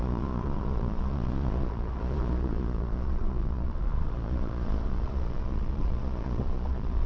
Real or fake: fake